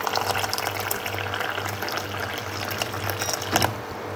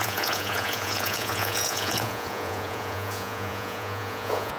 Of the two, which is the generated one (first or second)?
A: second